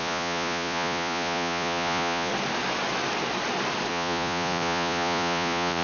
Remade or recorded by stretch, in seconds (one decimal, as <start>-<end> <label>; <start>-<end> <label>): 0.0-2.3 remade; 2.3-3.9 recorded; 3.9-5.8 remade